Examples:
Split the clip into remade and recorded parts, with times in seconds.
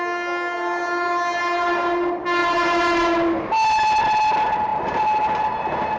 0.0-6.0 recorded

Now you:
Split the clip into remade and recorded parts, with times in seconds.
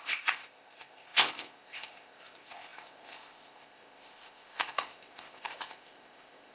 0.0-6.5 remade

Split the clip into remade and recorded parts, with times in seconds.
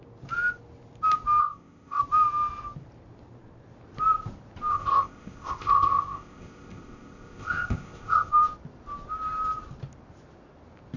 0.0-1.4 recorded; 1.4-2.0 remade; 2.0-4.7 recorded; 4.7-8.3 remade; 8.3-11.0 recorded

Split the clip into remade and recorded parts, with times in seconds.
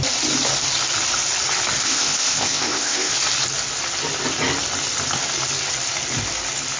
0.0-1.8 recorded; 1.8-3.1 remade; 3.1-6.8 recorded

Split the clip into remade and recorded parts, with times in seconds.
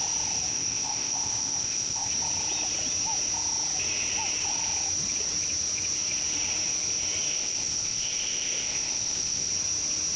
0.0-0.5 recorded; 0.5-2.1 remade; 2.1-7.3 recorded; 7.3-9.5 remade; 9.5-10.2 recorded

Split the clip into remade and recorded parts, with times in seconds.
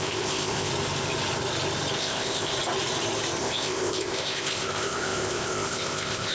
0.0-0.7 remade; 0.7-2.0 recorded; 2.0-2.5 remade; 2.5-3.4 recorded; 3.4-6.3 remade